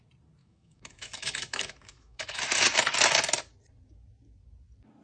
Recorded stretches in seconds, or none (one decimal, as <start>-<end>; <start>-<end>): 0.0-0.4; 2.4-5.0